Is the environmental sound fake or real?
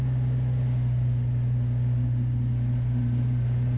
real